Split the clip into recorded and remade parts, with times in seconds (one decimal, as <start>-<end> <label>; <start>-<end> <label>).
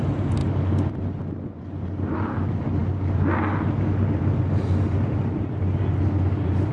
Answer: 0.0-6.7 recorded